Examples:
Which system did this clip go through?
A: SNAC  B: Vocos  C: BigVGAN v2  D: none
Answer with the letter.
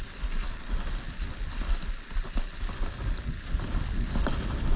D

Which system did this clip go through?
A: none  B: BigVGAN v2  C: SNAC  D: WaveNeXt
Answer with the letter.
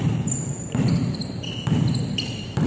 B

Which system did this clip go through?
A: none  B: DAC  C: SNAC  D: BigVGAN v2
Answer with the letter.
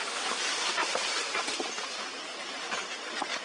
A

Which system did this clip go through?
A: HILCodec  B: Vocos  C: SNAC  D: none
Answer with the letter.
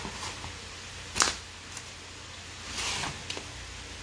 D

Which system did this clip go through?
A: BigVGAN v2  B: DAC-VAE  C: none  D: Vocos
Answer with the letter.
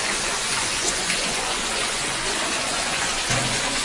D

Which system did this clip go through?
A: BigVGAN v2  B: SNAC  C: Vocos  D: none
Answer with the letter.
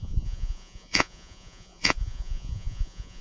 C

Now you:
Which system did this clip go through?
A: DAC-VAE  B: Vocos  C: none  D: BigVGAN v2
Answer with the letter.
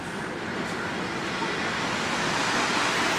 C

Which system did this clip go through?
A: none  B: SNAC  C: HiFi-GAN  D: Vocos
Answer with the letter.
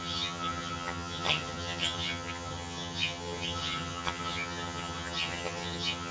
C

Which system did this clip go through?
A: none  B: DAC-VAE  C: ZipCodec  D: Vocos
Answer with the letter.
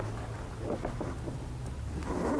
A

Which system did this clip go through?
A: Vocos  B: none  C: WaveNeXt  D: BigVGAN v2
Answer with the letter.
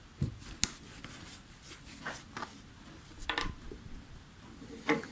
B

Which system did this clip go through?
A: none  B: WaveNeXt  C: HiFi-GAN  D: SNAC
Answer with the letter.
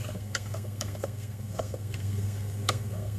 D